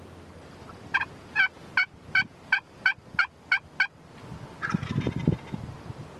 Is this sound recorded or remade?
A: recorded